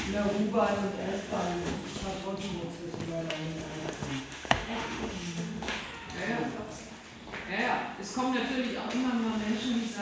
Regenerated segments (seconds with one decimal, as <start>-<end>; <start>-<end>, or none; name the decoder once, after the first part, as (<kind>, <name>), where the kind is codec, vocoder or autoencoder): 1.0-1.7 (autoencoder, DAC-VAE); 3.1-5.8